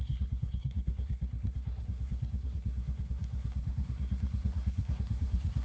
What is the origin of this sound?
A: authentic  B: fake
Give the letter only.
B